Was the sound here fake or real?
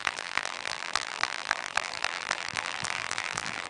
fake